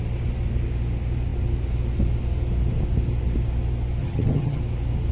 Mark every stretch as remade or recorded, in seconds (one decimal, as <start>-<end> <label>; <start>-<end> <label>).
0.0-4.0 recorded; 4.0-4.6 remade; 4.6-5.1 recorded